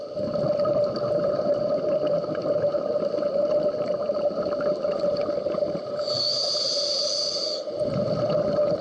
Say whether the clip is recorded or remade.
recorded